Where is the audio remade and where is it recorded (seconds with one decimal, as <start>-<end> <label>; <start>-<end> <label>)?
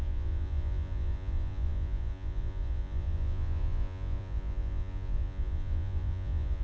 0.0-6.6 remade